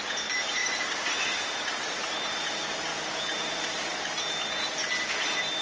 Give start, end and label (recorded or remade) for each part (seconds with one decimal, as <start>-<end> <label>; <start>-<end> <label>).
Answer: 0.0-3.9 remade; 3.9-5.6 recorded